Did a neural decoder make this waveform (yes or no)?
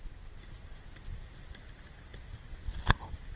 no